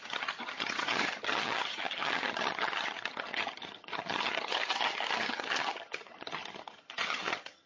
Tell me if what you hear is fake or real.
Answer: fake